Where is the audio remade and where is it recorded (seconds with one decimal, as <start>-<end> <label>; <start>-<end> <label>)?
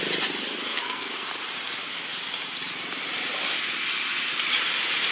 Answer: 0.0-0.7 recorded; 0.7-1.3 remade; 1.3-5.1 recorded